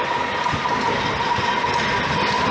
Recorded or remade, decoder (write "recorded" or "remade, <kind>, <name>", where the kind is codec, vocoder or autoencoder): recorded